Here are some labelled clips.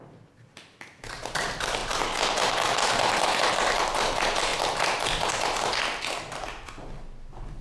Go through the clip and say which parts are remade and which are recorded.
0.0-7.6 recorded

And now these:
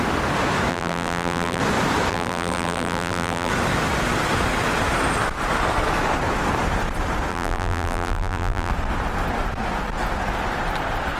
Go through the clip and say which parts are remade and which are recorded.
0.0-0.7 recorded; 0.7-1.6 remade; 1.6-2.1 recorded; 2.1-3.5 remade; 3.5-7.3 recorded; 7.3-8.7 remade; 8.7-11.2 recorded

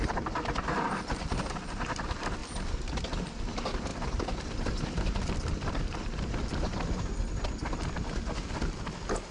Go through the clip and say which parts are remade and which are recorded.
0.0-2.4 recorded; 2.4-3.0 remade; 3.0-3.9 recorded; 3.9-7.0 remade; 7.0-9.3 recorded

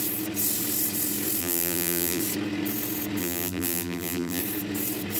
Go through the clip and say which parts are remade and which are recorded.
0.0-1.4 recorded; 1.4-2.2 remade; 2.2-3.2 recorded; 3.2-4.4 remade; 4.4-5.2 recorded

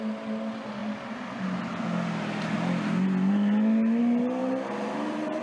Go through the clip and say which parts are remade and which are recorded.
0.0-4.4 recorded; 4.4-5.4 remade

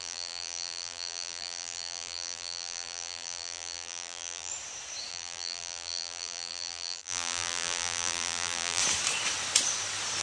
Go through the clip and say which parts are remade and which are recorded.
0.0-4.5 remade; 4.5-5.1 recorded; 5.1-8.8 remade; 8.8-10.2 recorded